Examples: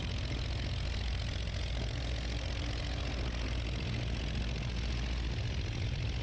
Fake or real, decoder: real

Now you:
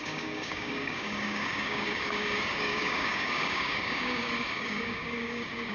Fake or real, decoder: fake, codec, DAC